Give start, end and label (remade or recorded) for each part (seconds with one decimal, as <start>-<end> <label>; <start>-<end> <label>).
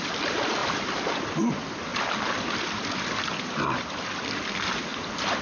0.0-5.4 remade